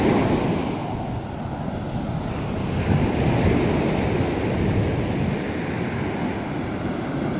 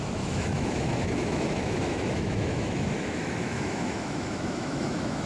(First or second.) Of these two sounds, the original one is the first